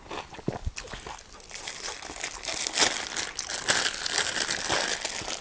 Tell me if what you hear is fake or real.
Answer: real